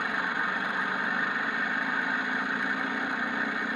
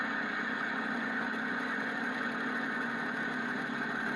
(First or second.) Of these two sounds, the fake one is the second